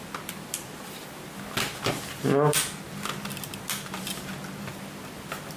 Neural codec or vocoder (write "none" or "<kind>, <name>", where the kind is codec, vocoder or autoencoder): none